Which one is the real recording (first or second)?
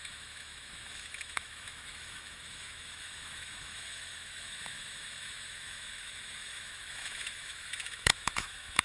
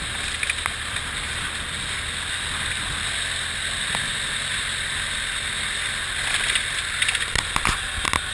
second